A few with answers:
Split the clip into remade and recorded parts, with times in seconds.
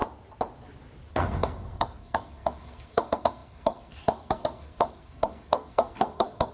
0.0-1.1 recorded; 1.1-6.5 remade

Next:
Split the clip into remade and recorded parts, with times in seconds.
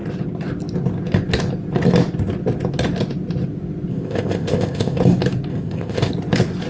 0.0-3.9 recorded; 3.9-5.0 remade; 5.0-5.5 recorded; 5.5-6.1 remade; 6.1-6.7 recorded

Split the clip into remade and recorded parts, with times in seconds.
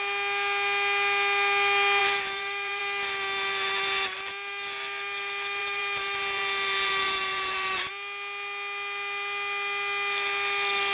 0.0-2.0 recorded; 2.0-2.8 remade; 2.8-5.6 recorded; 5.6-7.9 remade; 7.9-10.9 recorded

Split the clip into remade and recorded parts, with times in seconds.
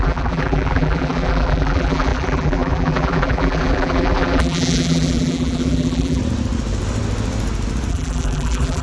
0.0-6.2 remade; 6.2-7.9 recorded; 7.9-8.8 remade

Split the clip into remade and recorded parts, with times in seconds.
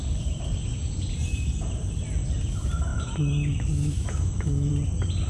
0.0-2.9 recorded; 2.9-4.7 remade; 4.7-5.3 recorded